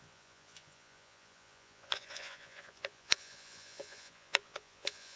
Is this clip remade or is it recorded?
remade